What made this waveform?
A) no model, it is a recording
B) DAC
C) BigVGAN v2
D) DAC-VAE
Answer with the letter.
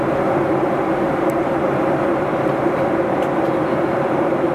A